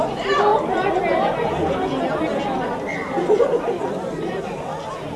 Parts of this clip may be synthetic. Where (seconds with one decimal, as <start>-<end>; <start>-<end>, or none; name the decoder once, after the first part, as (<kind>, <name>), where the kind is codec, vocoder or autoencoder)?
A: none